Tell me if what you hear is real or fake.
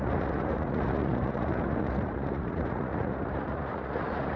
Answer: fake